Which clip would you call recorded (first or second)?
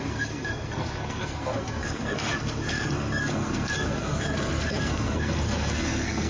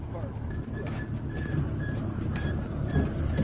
second